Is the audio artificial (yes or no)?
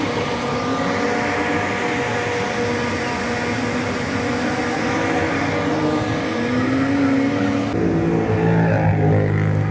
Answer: no